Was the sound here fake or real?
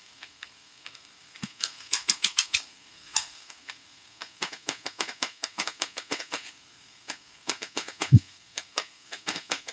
fake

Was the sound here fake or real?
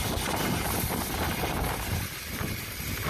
real